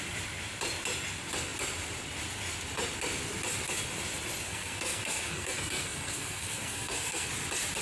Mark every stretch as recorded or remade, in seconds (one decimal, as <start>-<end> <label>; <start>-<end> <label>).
0.0-4.5 recorded; 4.5-7.3 remade; 7.3-7.8 recorded